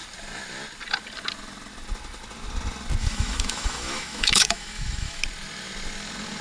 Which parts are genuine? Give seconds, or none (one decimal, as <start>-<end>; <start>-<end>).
0.0-3.0; 5.2-6.4